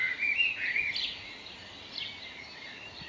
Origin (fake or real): real